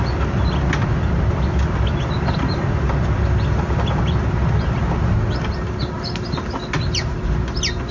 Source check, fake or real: real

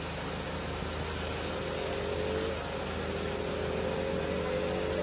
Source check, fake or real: real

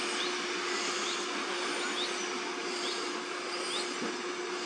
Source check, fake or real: real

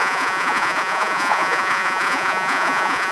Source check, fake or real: fake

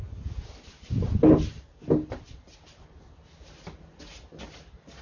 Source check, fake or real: real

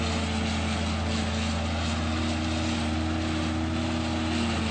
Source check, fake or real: real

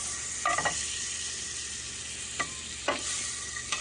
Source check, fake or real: real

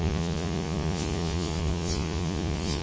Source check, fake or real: fake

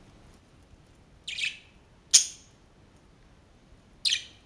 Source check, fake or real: real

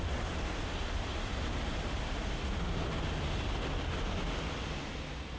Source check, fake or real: real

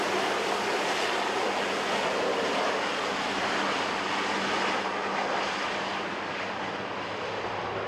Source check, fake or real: real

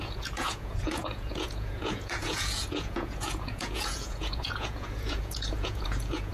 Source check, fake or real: fake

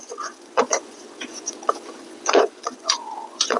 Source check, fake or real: fake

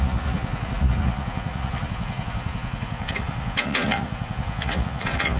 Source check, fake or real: fake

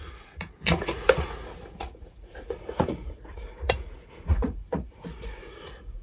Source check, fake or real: fake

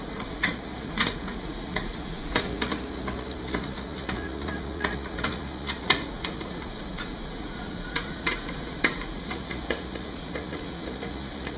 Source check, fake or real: fake